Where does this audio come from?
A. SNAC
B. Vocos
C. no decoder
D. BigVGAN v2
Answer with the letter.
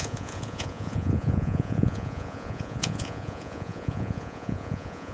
B